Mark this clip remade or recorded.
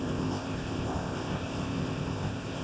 remade